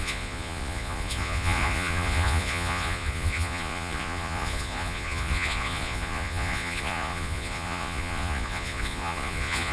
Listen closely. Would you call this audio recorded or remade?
remade